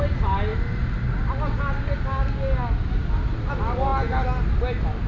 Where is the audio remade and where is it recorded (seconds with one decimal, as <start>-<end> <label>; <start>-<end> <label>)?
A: 0.0-5.1 recorded